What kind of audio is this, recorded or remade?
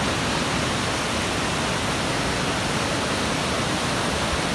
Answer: recorded